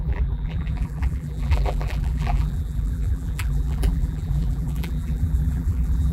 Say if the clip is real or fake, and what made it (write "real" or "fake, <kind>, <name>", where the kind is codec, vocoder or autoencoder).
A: fake, vocoder, BigVGAN v2